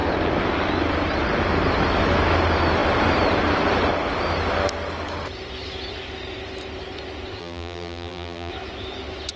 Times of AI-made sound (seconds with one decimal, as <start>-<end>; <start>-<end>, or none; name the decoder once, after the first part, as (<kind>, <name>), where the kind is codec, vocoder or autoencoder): 7.4-8.5 (vocoder, BigVGAN v2)